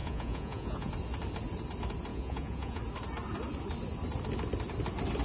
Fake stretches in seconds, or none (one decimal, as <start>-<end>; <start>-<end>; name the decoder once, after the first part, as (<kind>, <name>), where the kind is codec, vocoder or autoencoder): 0.0-0.9 (vocoder, Vocos); 2.1-2.8